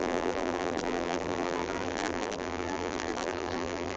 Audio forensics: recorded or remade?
remade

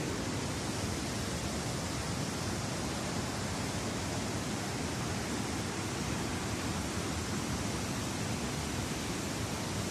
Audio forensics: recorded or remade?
recorded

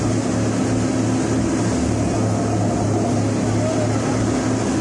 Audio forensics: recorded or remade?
recorded